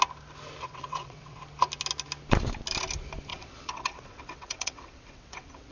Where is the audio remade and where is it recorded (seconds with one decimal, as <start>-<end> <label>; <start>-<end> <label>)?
0.0-0.6 recorded; 0.6-1.4 remade; 1.4-3.3 recorded; 3.3-5.7 remade